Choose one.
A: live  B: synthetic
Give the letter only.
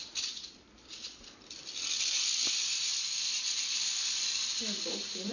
B